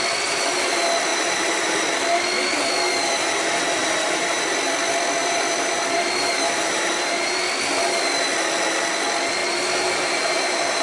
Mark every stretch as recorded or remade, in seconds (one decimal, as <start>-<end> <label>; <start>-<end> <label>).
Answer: 0.0-1.1 recorded; 1.1-1.7 remade; 1.7-3.8 recorded; 3.8-4.4 remade; 4.4-5.2 recorded; 5.2-7.4 remade; 7.4-9.4 recorded; 9.4-10.8 remade